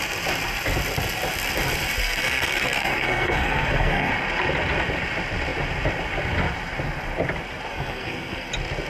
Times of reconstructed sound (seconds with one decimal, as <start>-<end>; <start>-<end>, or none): 2.0-4.1; 7.7-8.5